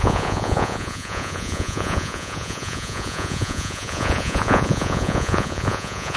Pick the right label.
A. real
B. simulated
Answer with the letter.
B